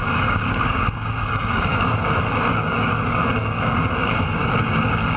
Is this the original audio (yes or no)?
no